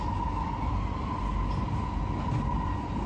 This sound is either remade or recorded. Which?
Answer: recorded